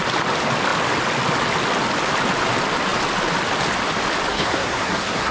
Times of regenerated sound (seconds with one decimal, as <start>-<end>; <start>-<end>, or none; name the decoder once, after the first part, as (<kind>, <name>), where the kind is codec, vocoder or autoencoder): 4.3-5.3 (codec, SNAC)